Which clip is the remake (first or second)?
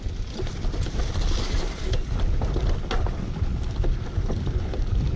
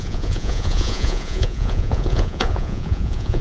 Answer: second